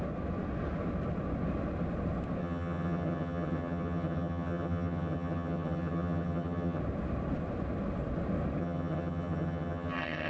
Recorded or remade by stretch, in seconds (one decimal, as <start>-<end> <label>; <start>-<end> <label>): 0.0-2.4 recorded; 2.4-6.8 remade; 6.8-8.6 recorded; 8.6-10.3 remade